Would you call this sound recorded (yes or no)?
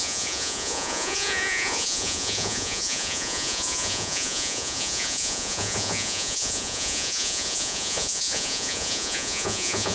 no